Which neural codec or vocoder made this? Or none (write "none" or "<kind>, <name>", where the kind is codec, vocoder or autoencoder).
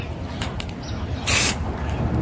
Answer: none